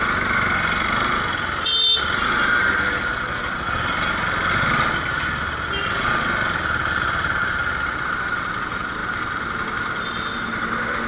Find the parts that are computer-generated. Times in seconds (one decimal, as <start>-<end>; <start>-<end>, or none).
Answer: none